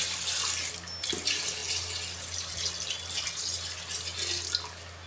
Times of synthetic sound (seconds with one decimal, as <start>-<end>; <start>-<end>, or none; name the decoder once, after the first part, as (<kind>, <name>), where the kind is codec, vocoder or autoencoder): none